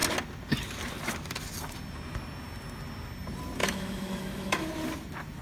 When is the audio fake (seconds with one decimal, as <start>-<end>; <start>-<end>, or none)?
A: 3.6-4.7